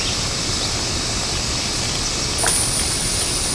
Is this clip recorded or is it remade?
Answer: recorded